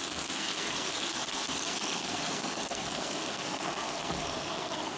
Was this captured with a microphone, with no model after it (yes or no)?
no